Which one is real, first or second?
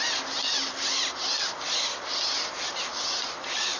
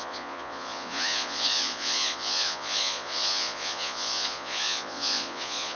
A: first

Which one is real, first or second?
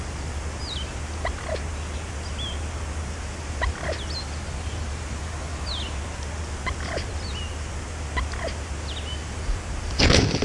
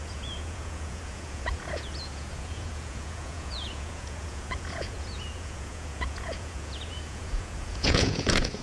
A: first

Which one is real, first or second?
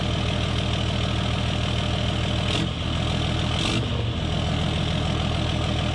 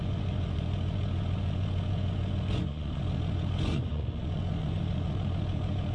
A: first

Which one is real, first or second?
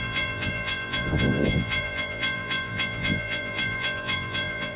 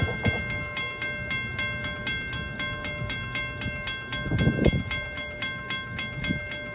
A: second